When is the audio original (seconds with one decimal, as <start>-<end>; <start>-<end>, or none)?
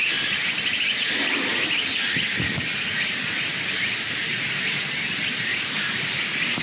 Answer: 0.0-6.6